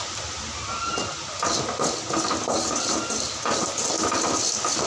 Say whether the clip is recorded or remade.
recorded